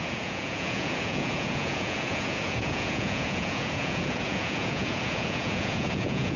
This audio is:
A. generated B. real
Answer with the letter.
A